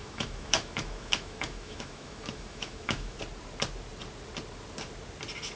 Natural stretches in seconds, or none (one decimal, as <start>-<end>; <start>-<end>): 3.2-5.6